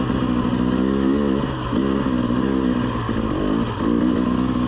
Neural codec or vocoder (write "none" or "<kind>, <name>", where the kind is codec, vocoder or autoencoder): none